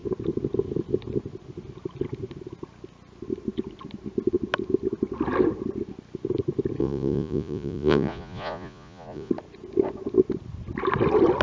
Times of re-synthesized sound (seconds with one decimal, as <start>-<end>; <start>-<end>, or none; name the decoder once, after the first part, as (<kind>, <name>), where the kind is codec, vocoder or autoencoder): 6.8-9.3 (vocoder, Vocos)